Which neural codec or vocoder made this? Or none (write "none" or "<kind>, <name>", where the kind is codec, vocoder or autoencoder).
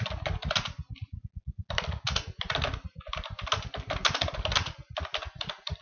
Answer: none